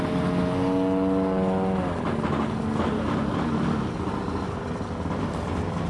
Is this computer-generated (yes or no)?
no